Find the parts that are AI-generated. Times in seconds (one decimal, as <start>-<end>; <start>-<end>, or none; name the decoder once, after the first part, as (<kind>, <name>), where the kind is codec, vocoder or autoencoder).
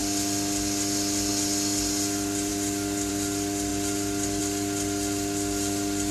none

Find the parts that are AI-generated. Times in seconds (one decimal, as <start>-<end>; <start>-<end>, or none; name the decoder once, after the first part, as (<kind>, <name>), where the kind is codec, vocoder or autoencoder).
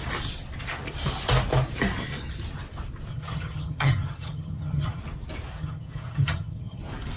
3.1-5.0 (vocoder, HiFi-GAN); 5.6-6.8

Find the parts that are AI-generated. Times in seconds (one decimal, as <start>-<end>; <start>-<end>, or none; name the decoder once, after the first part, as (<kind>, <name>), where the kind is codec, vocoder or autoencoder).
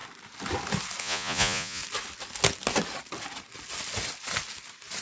1.0-1.8 (vocoder, Vocos)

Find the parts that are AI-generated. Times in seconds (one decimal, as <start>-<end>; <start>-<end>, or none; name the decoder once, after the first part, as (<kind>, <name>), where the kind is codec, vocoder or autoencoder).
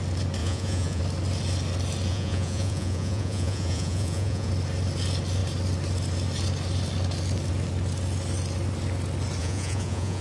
0.4-1.0 (vocoder, Vocos); 2.1-4.5; 9.4-10.2